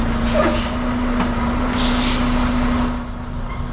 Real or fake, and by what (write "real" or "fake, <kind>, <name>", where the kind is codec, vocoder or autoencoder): real